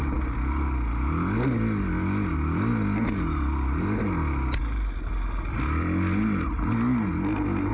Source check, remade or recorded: recorded